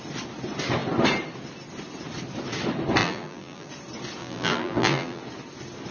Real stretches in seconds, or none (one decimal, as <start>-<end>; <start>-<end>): 0.0-3.0; 3.7-4.2; 5.2-5.9